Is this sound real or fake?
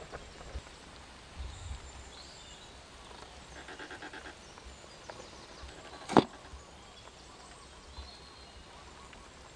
real